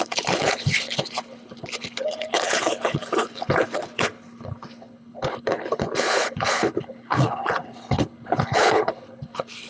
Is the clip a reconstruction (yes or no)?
yes